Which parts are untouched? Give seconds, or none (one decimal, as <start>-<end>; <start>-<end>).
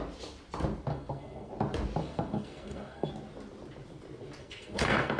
0.0-0.9; 1.5-2.0; 3.1-4.4